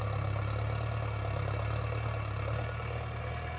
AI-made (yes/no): no